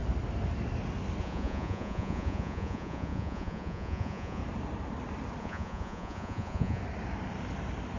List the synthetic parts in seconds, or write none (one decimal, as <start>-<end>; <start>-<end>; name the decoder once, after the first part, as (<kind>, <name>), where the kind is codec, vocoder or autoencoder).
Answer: 1.2-4.4 (vocoder, Vocos); 5.4-6.8